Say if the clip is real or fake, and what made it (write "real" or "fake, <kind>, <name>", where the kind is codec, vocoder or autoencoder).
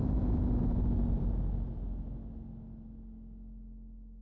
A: real